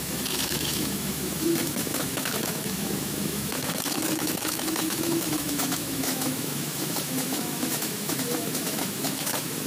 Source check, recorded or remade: remade